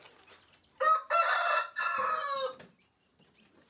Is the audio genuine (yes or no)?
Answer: yes